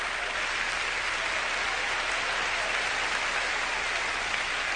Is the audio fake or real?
real